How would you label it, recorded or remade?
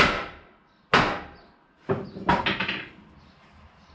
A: recorded